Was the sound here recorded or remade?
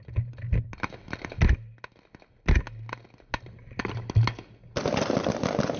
recorded